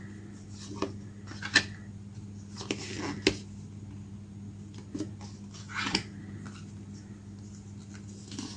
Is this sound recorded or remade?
recorded